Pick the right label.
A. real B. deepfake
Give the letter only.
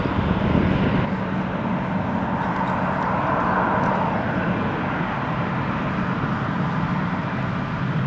A